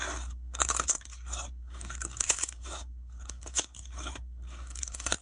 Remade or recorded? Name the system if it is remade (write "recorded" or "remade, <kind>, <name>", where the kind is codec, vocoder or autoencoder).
remade, codec, SNAC